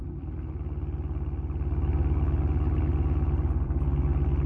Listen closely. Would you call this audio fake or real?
real